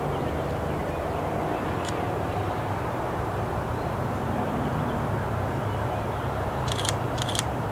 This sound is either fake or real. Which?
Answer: fake